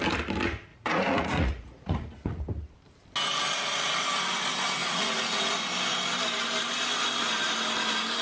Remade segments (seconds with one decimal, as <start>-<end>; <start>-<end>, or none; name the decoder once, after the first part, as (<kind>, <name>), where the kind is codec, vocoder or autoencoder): 0.7-2.4 (vocoder, Vocos); 4.8-5.7